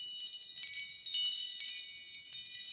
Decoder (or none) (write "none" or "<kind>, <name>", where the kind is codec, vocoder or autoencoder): none